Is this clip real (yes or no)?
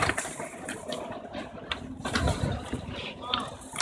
yes